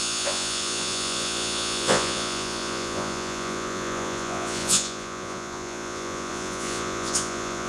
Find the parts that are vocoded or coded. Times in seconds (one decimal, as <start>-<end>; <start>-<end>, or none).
0.0-7.7